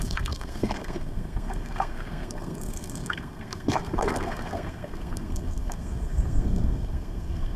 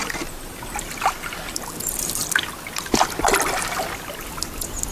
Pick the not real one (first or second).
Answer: first